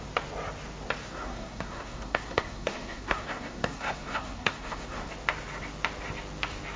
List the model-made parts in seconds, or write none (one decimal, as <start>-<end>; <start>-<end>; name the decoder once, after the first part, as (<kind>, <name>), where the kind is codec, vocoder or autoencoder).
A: 1.0-5.1 (codec, SNAC)